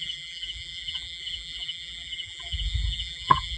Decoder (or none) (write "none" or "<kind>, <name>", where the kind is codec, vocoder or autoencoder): vocoder, BigVGAN v2